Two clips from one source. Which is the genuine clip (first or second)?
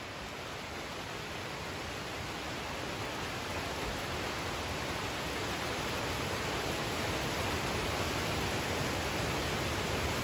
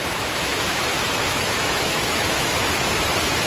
first